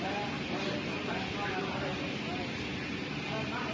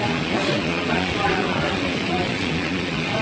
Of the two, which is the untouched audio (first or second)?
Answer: first